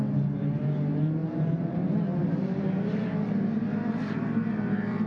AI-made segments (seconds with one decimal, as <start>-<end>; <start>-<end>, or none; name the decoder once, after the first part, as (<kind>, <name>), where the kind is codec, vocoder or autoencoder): 1.2-1.8 (vocoder, BigVGAN v2); 2.2-5.1